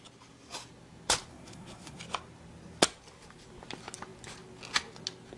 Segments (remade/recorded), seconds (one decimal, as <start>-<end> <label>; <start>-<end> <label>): 0.0-1.3 recorded; 1.3-2.0 remade; 2.0-5.4 recorded